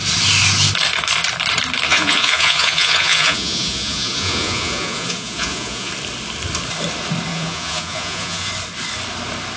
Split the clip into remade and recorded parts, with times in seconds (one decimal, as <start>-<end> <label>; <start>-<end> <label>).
0.0-1.9 recorded; 1.9-5.9 remade; 5.9-7.3 recorded; 7.3-8.5 remade; 8.5-9.6 recorded